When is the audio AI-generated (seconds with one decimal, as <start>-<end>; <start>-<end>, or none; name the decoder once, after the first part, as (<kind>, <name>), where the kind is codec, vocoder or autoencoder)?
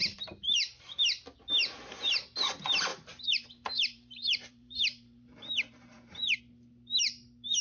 0.0-1.0 (vocoder, BigVGAN v2); 2.9-6.4